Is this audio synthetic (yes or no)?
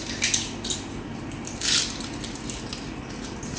no